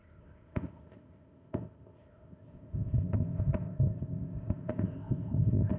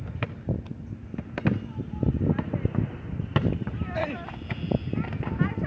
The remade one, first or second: first